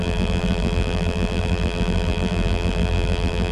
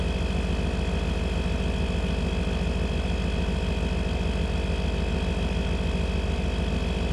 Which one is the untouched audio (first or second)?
second